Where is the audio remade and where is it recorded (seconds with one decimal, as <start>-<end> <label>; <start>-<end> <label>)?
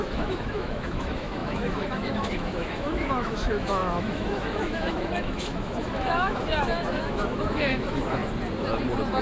0.0-8.2 remade; 8.2-9.2 recorded